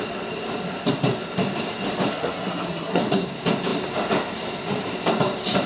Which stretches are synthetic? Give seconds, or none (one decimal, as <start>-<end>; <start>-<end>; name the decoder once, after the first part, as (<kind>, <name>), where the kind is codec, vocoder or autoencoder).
2.1-3.0 (codec, SNAC)